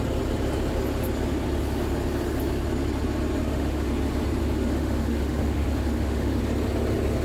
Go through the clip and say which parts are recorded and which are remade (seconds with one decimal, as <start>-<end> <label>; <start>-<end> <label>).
0.0-3.4 recorded; 3.4-3.9 remade; 3.9-4.4 recorded; 4.4-6.4 remade; 6.4-7.2 recorded